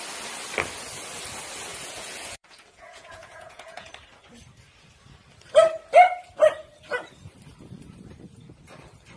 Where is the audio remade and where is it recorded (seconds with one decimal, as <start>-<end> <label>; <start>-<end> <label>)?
0.0-1.7 recorded; 1.7-3.9 remade; 3.9-9.2 recorded